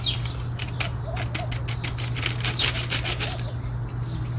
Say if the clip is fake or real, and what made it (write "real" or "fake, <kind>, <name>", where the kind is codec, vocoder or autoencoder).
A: real